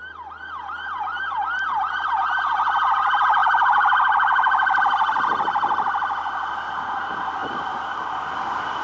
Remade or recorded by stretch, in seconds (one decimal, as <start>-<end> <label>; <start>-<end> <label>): 0.0-3.4 recorded; 3.4-6.5 remade; 6.5-7.4 recorded; 7.4-8.3 remade; 8.3-8.8 recorded